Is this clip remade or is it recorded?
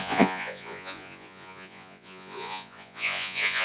remade